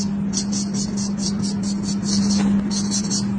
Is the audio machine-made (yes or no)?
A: no